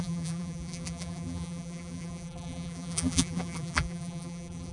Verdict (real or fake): fake